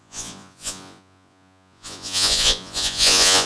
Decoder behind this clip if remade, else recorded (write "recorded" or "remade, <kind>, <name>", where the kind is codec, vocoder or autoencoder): remade, vocoder, Vocos